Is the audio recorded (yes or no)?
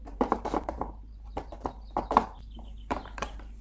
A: no